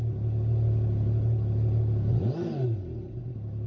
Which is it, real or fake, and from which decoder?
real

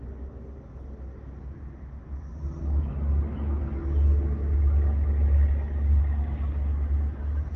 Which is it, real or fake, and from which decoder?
real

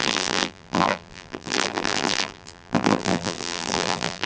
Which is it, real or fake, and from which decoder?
fake, vocoder, BigVGAN v2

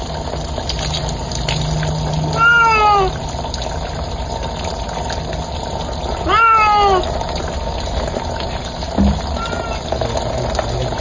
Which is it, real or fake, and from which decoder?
real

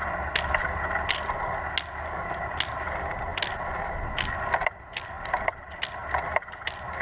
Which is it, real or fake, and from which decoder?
real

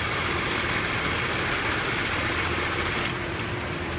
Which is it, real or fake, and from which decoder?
fake, vocoder, BigVGAN v2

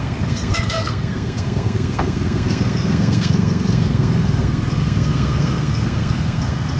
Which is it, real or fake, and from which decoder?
fake, codec, SNAC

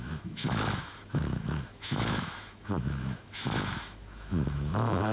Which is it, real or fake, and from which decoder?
fake, autoencoder, DAC-VAE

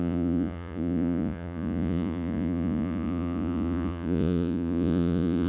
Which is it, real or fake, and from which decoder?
fake, vocoder, Vocos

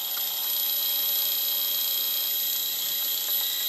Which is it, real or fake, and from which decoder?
real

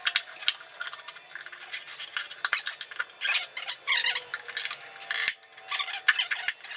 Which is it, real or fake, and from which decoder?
real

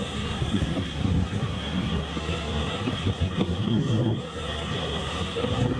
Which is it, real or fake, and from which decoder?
fake, codec, SNAC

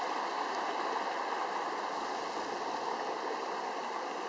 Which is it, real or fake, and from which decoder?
real